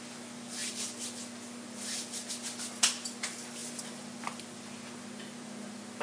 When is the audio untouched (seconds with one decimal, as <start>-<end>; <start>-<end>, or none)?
0.0-6.0